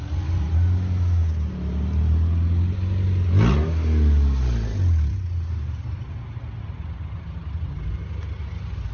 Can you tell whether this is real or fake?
real